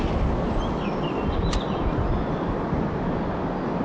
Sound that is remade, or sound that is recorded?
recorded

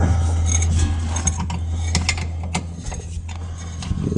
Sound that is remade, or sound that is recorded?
recorded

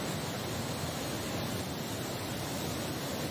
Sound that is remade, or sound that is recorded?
recorded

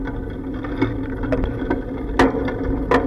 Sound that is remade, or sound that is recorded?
recorded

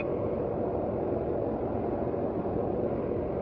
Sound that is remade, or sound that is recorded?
recorded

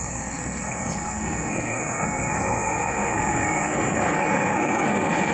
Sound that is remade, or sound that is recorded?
remade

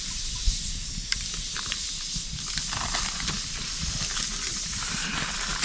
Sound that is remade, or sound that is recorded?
recorded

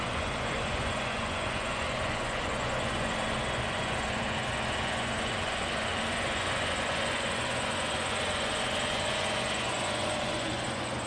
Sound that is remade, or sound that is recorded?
remade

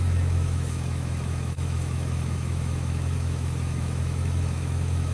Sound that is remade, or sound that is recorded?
remade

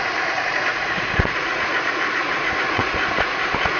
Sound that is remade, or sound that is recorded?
remade